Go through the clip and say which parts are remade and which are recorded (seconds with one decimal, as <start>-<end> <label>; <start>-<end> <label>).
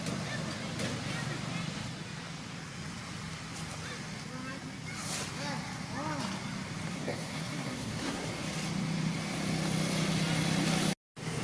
0.0-6.9 recorded; 6.9-8.3 remade; 8.3-11.4 recorded